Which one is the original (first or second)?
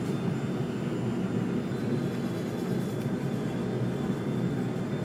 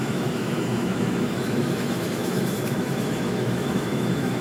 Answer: first